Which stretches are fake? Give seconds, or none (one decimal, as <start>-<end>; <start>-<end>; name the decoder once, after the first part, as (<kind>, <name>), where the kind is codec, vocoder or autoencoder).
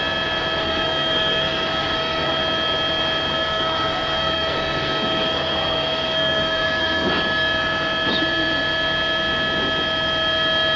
0.6-2.4 (codec, SNAC); 3.3-7.1